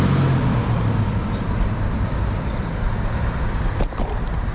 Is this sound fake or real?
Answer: real